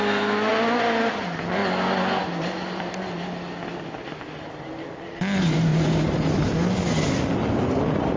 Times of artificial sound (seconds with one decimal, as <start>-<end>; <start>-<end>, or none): 5.7-6.3